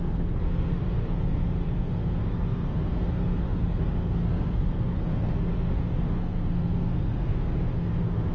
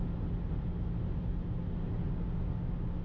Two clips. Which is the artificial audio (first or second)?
first